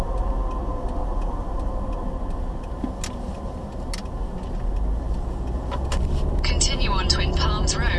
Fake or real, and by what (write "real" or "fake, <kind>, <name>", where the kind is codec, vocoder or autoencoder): real